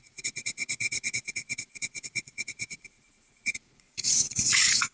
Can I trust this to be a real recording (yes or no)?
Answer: no